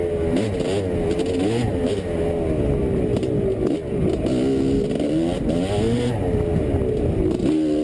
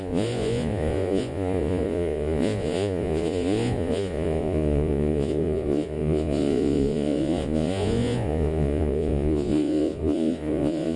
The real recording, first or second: first